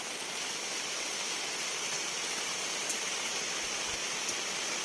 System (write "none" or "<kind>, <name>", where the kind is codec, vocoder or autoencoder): none